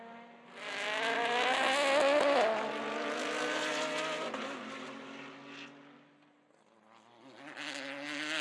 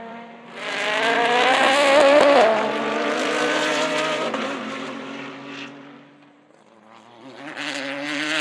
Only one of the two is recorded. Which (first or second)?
first